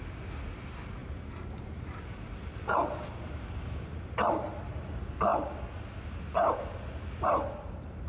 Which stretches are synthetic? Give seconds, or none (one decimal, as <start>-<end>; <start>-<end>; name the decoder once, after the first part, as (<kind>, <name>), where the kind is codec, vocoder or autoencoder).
1.0-3.4 (vocoder, BigVGAN v2)